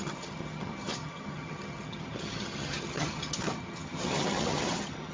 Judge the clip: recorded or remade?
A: remade